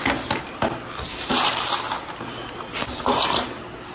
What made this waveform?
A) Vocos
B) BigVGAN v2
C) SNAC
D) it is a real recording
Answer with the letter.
D